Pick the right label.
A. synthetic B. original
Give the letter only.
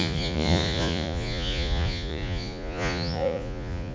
A